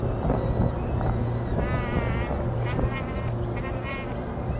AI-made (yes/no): no